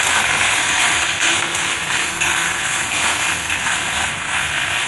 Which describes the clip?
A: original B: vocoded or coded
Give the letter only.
B